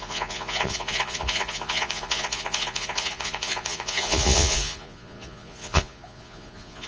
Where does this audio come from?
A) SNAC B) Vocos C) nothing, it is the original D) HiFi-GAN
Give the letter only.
B